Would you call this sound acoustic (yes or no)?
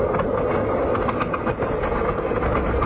yes